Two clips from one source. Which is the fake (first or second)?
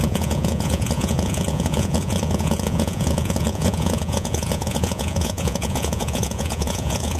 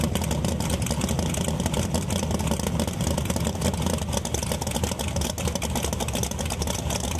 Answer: first